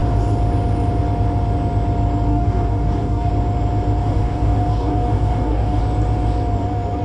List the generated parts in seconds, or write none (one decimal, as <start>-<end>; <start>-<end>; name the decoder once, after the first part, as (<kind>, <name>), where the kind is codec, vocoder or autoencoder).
2.3-3.3 (codec, DAC); 4.0-5.8